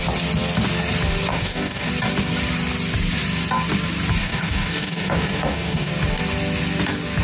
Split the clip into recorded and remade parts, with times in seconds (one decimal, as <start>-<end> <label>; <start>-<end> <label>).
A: 0.0-1.3 recorded; 1.3-1.9 remade; 1.9-4.2 recorded; 4.2-5.9 remade; 5.9-7.2 recorded